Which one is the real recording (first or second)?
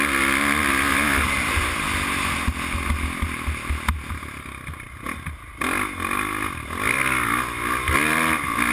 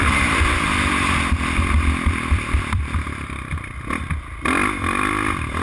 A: first